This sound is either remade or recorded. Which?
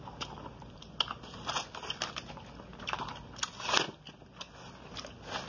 recorded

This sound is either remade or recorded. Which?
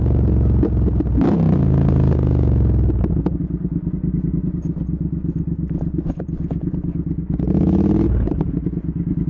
recorded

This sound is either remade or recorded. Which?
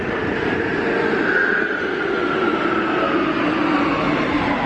recorded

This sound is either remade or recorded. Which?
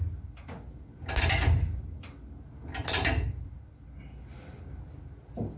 recorded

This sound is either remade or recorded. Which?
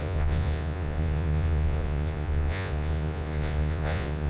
remade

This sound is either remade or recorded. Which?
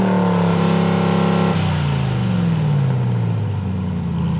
recorded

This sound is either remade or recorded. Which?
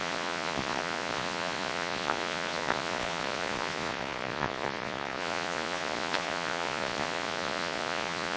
remade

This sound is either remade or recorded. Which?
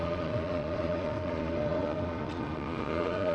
remade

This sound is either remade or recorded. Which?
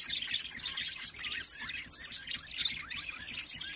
recorded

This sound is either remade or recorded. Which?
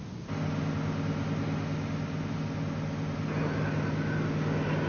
recorded